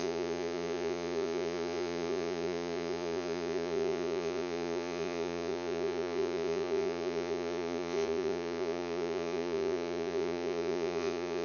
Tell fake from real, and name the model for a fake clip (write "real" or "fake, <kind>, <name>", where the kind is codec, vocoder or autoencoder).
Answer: fake, vocoder, Vocos